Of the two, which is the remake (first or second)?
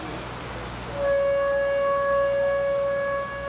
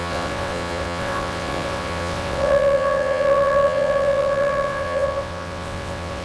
second